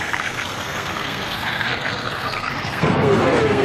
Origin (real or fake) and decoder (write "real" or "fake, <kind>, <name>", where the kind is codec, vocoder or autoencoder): fake, codec, SNAC